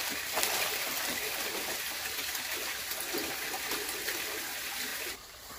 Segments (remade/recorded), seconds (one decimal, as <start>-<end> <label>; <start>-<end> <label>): 0.0-1.5 remade; 1.5-4.9 recorded; 4.9-5.6 remade